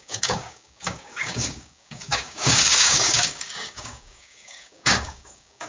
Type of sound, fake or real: fake